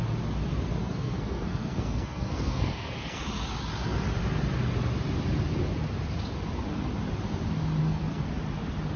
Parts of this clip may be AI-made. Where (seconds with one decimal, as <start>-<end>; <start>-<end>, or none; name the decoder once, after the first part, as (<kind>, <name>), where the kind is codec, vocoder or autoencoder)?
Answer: 0.8-3.3 (codec, SNAC); 7.8-8.3